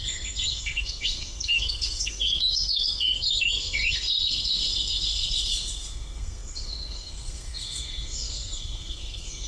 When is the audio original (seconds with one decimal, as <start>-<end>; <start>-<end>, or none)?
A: none

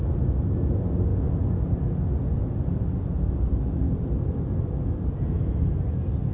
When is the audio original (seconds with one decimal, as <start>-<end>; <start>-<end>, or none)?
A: 0.0-6.3

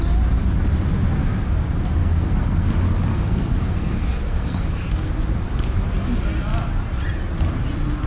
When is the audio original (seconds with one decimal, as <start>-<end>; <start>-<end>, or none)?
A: 0.0-2.0; 2.7-3.1; 5.1-8.1

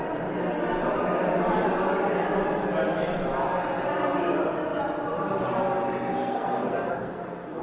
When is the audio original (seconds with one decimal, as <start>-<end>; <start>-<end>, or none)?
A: 0.0-6.2